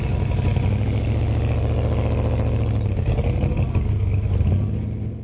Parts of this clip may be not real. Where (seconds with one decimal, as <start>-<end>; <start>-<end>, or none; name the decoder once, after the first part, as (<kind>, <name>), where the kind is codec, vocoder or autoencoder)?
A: none